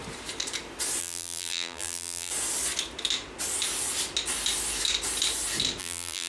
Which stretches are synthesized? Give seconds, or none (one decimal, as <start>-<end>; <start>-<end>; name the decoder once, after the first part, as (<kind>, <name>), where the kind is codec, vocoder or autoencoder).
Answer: 1.0-2.3 (vocoder, BigVGAN v2); 5.8-6.3